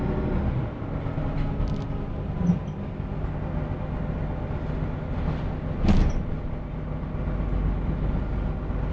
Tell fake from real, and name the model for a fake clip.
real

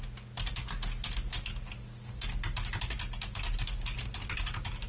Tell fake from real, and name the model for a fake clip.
real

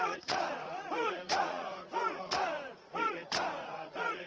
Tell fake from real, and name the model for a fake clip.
fake, vocoder, Vocos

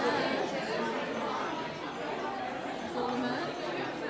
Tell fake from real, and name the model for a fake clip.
real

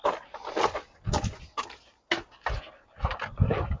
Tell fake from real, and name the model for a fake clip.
real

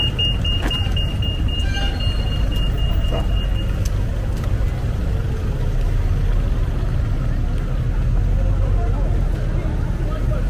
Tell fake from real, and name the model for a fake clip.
real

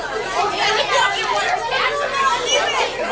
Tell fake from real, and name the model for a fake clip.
real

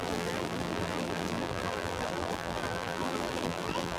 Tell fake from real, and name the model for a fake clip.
fake, vocoder, BigVGAN v2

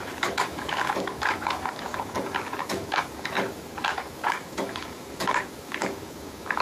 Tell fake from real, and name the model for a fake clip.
fake, codec, DAC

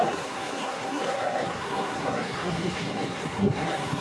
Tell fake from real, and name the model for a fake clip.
fake, codec, SNAC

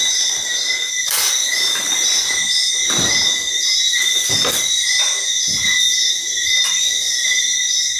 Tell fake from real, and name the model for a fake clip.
fake, vocoder, BigVGAN v2